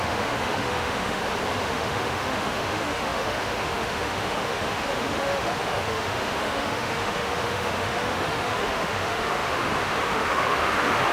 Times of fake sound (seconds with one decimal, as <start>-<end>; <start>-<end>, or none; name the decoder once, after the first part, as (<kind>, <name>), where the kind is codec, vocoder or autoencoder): 0.0-1.2 (autoencoder, DAC-VAE); 1.7-11.1